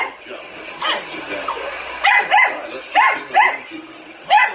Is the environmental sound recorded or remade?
recorded